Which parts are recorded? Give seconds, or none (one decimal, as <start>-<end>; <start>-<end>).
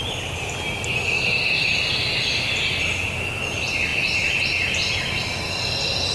0.0-6.1